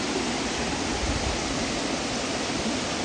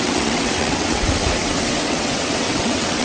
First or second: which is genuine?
first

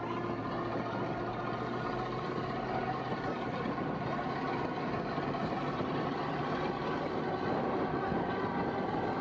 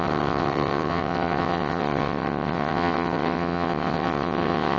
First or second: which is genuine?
first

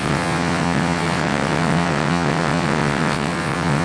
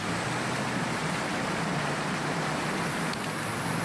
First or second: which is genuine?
second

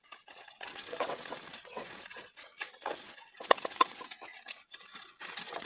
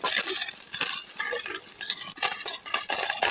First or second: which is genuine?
second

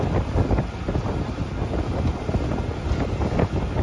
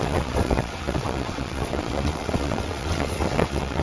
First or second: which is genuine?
first